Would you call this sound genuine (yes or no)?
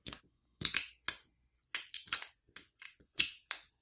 no